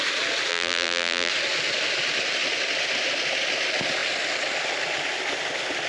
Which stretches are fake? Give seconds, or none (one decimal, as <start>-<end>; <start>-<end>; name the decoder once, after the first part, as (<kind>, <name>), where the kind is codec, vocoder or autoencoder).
0.5-1.3 (vocoder, BigVGAN v2)